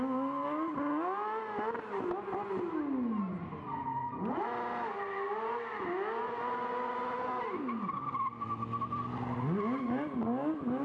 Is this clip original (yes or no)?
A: yes